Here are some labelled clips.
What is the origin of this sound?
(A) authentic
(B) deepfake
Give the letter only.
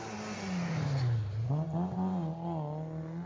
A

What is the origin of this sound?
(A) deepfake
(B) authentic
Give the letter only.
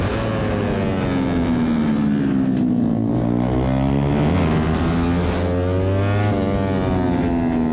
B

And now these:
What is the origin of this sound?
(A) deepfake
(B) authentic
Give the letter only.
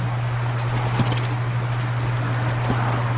B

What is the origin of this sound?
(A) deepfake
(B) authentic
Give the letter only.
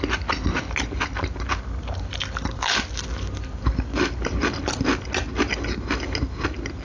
B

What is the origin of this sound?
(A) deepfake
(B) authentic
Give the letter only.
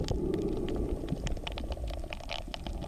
B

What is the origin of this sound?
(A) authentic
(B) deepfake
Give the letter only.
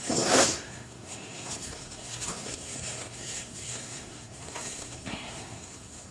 B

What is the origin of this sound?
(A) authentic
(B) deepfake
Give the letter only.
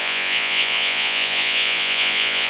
B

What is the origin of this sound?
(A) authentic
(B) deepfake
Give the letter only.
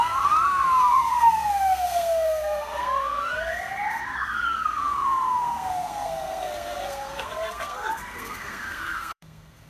B